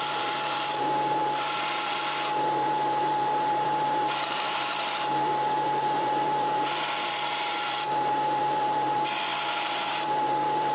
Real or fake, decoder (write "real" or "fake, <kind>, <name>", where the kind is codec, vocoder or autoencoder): fake, vocoder, BigVGAN v2